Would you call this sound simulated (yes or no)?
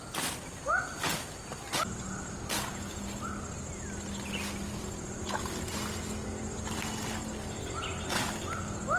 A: no